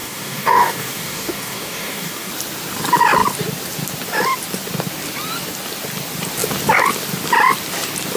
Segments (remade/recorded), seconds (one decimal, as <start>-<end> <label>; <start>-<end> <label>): 0.0-2.3 remade; 2.3-8.2 recorded